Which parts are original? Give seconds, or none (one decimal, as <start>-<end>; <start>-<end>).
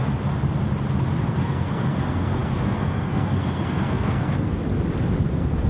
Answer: 0.0-1.3; 4.6-5.2